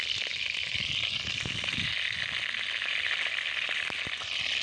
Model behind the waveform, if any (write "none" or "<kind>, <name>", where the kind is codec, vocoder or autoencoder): none